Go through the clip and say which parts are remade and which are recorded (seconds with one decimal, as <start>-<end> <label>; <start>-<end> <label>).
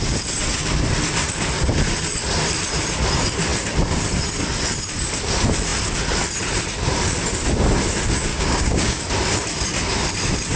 0.0-8.3 recorded; 8.3-9.0 remade; 9.0-10.6 recorded